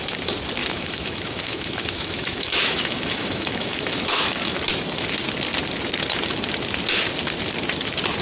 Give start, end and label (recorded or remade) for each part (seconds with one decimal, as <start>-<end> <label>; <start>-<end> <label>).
0.0-0.6 recorded; 0.6-4.6 remade; 4.6-8.2 recorded